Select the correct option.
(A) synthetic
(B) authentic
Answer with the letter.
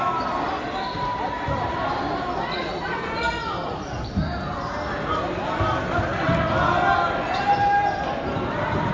B